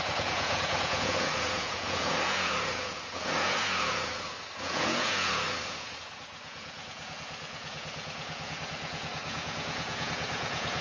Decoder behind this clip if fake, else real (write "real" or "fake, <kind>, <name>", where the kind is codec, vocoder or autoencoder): fake, vocoder, Vocos